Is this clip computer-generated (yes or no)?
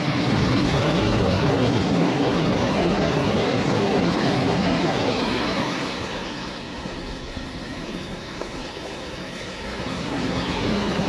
yes